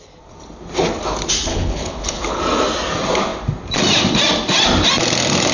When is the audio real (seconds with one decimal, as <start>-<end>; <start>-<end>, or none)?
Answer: 0.0-1.5; 2.4-5.5

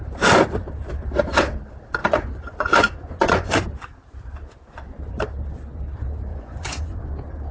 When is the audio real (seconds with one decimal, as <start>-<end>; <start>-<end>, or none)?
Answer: 0.0-2.0; 3.6-6.3; 7.0-7.5

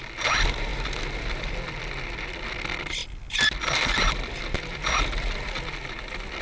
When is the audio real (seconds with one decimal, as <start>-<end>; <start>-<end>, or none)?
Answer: 0.0-6.4

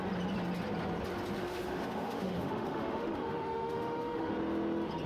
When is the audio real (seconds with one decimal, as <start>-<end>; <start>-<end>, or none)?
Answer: 0.0-1.4; 4.3-5.1

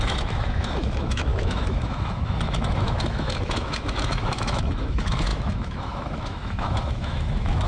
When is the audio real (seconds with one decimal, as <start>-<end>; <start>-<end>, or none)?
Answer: none

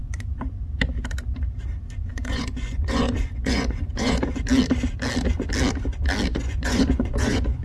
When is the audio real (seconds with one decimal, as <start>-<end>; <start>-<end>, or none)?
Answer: 0.5-2.1; 4.4-6.3